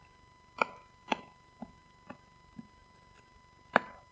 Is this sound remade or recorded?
recorded